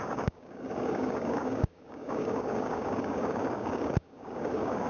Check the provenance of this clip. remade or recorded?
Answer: remade